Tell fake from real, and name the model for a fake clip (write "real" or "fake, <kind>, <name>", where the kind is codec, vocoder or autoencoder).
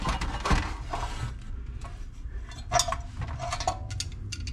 real